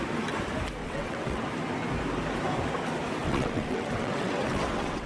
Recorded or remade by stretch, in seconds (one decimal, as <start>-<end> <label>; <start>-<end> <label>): 0.0-0.8 recorded; 0.8-1.4 remade; 1.4-3.2 recorded; 3.2-5.1 remade